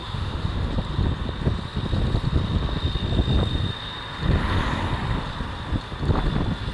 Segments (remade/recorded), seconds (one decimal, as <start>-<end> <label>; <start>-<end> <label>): 0.0-0.7 remade; 0.7-6.7 recorded